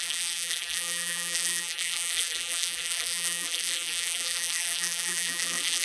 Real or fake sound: fake